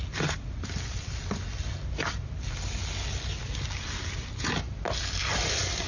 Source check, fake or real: real